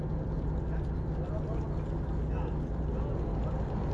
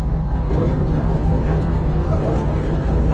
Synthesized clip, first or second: second